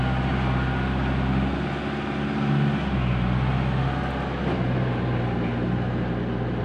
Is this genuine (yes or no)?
yes